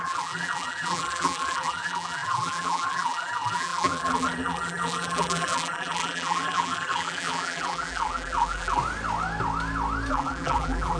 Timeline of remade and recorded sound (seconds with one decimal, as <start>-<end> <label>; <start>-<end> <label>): 0.0-8.8 remade; 8.8-10.1 recorded; 10.1-11.0 remade